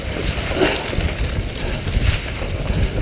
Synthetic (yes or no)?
no